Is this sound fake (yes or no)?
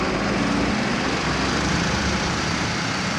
yes